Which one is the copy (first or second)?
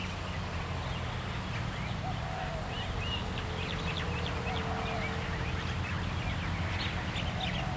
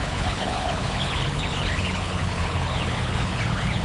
second